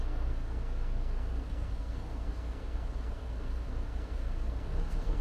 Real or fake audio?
fake